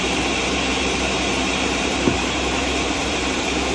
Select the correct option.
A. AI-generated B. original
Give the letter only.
A